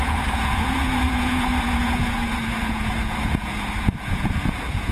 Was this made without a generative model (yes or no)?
no